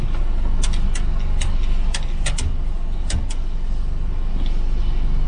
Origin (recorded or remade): recorded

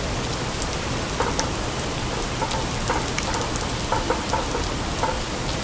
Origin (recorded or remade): recorded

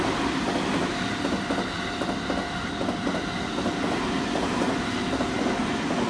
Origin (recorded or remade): recorded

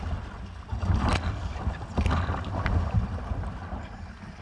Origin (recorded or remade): recorded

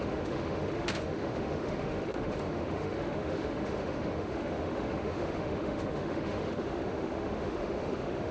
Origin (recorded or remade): remade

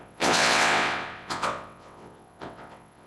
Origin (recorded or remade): remade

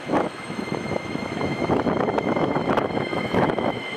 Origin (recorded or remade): remade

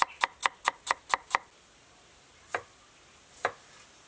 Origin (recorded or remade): recorded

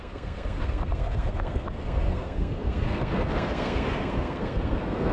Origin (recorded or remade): remade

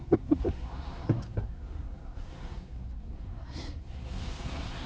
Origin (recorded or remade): remade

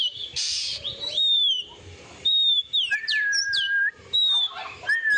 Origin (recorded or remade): remade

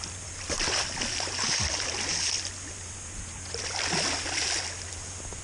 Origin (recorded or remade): recorded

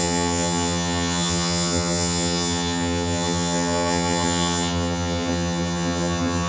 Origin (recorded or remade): remade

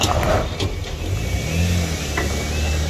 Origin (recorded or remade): recorded